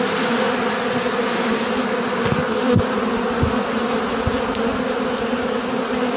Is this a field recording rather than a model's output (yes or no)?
yes